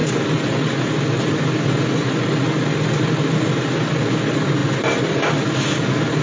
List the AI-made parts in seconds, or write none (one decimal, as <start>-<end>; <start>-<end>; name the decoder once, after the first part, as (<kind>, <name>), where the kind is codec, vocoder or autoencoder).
none